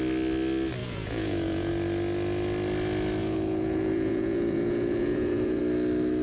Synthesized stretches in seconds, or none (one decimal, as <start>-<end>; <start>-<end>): 0.8-1.7; 3.2-5.6

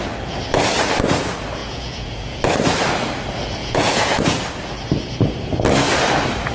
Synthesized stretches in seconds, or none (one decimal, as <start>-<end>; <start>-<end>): 1.6-2.4; 3.6-4.2

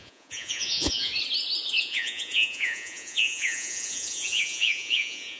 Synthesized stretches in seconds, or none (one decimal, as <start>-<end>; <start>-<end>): 0.0-1.1; 1.8-5.4